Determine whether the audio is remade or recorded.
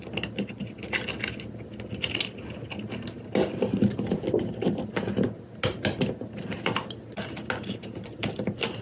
recorded